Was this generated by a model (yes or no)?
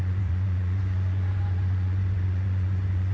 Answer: yes